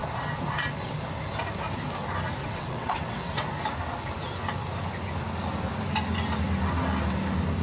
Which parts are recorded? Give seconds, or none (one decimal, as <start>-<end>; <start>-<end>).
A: 0.0-2.4; 3.5-7.6